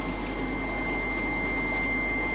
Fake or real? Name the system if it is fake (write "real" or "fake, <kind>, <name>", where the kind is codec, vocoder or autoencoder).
real